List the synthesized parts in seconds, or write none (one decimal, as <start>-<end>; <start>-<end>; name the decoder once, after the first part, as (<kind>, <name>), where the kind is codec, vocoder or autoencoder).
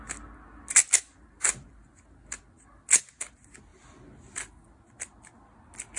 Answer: 1.0-1.7 (vocoder, BigVGAN v2)